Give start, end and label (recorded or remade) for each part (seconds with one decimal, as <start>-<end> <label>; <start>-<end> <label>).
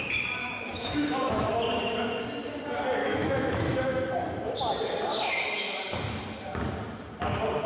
0.0-0.4 recorded; 0.4-1.5 remade; 1.5-3.0 recorded; 3.0-4.6 remade; 4.6-5.1 recorded; 5.1-6.2 remade; 6.2-7.7 recorded